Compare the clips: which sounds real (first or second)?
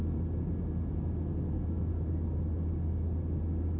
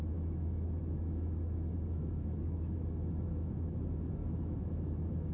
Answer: first